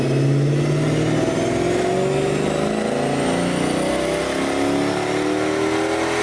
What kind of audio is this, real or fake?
real